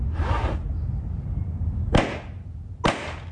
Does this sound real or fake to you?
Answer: real